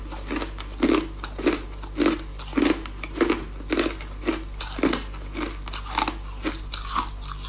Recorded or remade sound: recorded